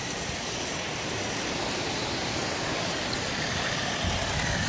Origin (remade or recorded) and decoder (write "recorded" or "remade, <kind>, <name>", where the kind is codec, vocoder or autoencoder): remade, vocoder, BigVGAN v2